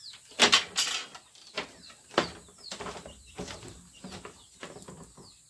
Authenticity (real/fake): real